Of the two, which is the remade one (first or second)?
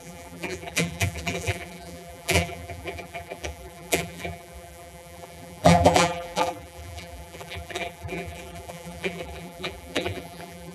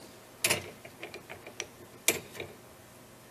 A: first